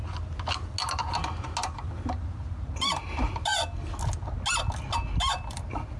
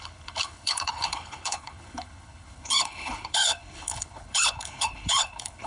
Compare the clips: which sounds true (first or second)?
first